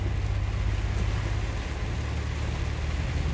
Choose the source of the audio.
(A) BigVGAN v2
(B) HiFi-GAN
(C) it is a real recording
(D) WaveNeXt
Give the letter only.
C